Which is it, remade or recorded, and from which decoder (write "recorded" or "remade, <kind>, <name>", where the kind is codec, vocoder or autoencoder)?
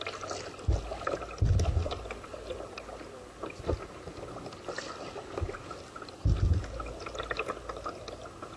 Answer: recorded